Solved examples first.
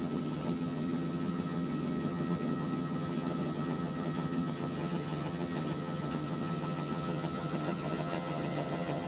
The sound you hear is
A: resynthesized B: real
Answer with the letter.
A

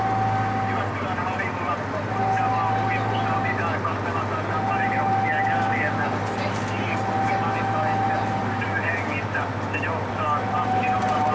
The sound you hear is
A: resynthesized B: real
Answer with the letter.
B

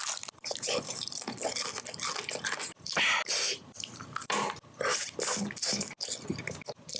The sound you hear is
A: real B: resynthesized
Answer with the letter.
A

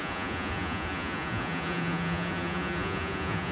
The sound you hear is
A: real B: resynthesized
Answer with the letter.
B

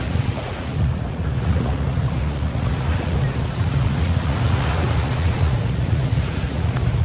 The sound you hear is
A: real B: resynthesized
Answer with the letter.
B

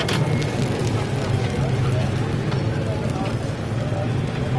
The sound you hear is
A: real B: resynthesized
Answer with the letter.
A